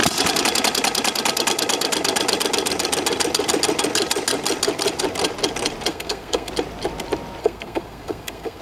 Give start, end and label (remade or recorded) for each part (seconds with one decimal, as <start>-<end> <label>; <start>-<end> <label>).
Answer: 0.0-5.9 recorded; 5.9-6.5 remade; 6.5-7.4 recorded; 7.4-8.6 remade